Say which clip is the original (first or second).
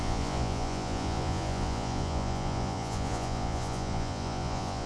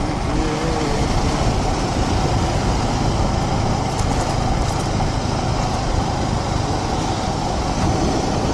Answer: second